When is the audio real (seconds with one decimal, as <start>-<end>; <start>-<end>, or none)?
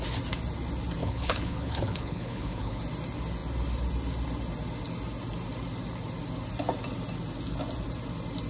0.0-1.0; 2.8-8.5